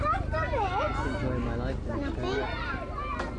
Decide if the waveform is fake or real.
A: real